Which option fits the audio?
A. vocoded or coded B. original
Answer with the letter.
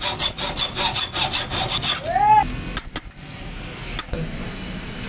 B